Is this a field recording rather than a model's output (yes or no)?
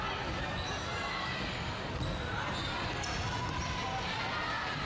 yes